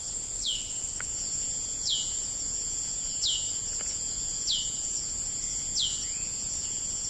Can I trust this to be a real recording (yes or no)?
no